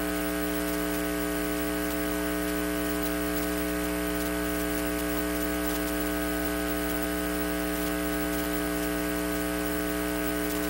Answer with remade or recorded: recorded